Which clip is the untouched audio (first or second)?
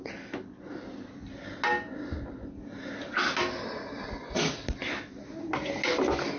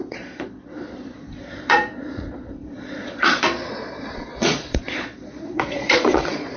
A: first